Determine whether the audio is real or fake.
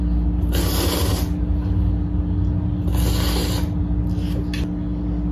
real